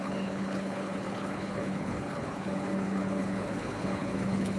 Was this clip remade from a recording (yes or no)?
yes